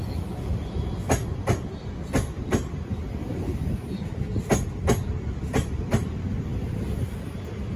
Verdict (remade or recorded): recorded